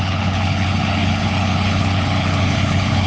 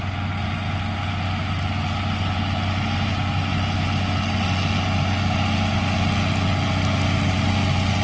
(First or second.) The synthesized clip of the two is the first